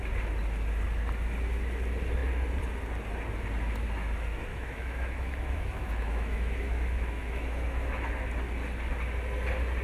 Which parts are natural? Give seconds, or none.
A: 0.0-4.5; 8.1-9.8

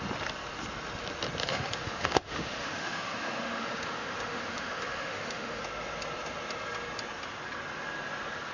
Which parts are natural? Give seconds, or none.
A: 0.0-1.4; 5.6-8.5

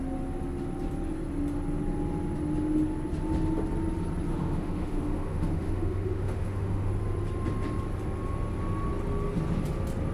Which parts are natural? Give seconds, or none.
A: 0.0-4.3; 6.9-10.1